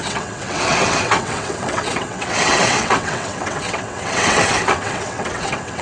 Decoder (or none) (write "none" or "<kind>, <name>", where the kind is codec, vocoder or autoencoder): vocoder, WaveNeXt